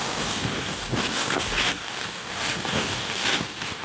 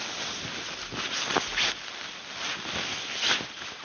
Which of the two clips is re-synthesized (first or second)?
first